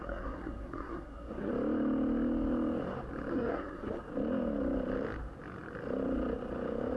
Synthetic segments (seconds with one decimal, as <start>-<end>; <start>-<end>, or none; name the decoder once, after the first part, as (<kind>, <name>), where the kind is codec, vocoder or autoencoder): 0.0-1.5 (codec, SNAC); 3.3-4.0